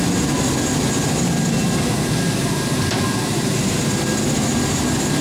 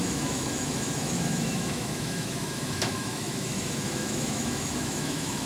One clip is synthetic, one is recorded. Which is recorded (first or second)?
first